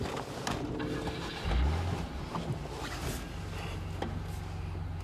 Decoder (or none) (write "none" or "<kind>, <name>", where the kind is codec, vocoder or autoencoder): none